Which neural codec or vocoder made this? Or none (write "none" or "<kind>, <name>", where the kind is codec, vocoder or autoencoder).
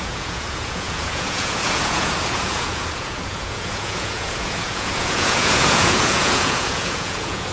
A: vocoder, Vocos